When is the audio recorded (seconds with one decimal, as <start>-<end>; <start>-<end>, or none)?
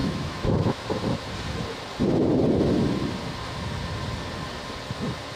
0.8-5.4